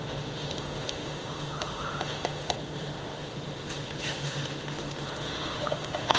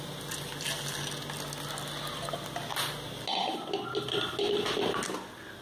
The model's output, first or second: first